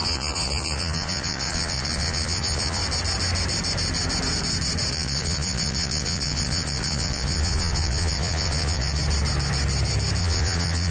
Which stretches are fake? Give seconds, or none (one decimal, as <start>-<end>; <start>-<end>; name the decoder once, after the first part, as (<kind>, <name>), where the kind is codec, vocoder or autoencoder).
0.0-2.8 (vocoder, Vocos); 4.9-9.0; 10.2-10.9